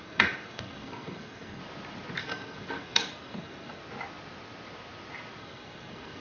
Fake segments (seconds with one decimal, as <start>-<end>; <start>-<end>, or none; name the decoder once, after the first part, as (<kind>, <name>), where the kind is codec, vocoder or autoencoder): 0.0-1.6 (codec, SNAC); 2.2-3.8; 5.4-6.2